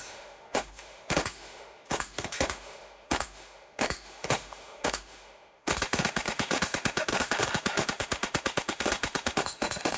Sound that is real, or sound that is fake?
fake